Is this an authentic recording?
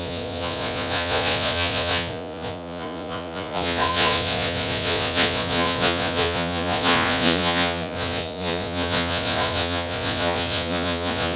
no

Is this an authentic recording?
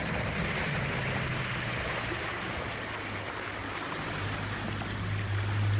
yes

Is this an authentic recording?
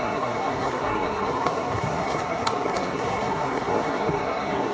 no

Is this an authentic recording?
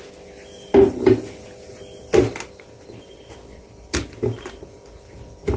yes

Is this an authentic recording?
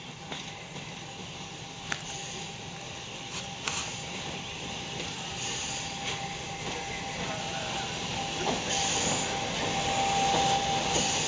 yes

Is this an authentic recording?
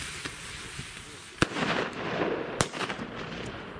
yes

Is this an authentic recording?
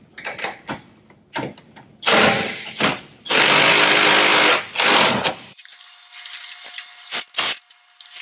yes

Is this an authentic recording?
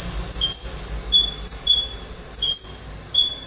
no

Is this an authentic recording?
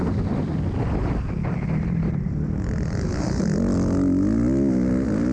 yes